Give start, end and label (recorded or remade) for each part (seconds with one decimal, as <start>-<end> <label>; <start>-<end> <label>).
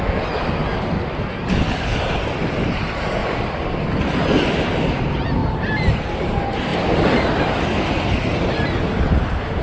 0.0-3.2 recorded; 3.2-3.9 remade; 3.9-5.4 recorded; 5.4-5.9 remade; 5.9-6.7 recorded; 6.7-9.6 remade